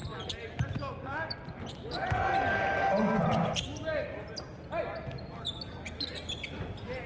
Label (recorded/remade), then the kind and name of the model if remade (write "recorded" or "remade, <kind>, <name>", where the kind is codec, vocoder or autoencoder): recorded